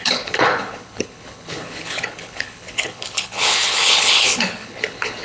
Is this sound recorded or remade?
remade